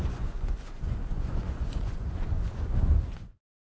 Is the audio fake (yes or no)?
yes